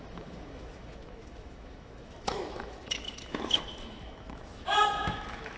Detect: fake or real fake